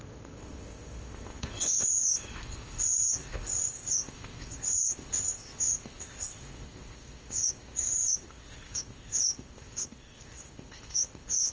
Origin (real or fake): fake